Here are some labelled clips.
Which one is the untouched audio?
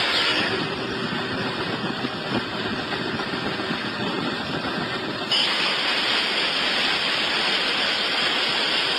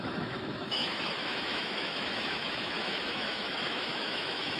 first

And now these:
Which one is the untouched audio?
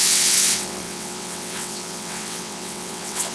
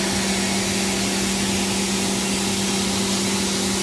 second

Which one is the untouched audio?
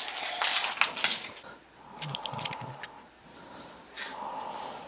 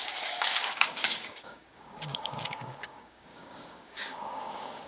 first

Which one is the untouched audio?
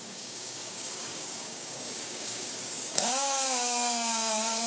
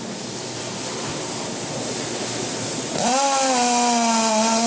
second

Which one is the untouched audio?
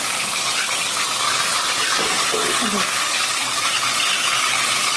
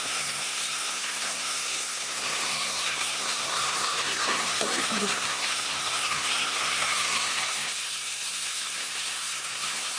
first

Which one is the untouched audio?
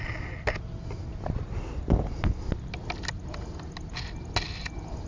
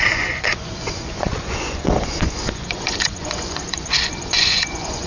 first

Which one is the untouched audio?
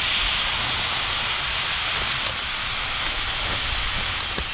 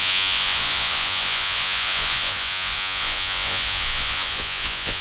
first